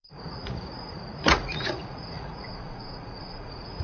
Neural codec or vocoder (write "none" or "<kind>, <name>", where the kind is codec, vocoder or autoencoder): vocoder, Vocos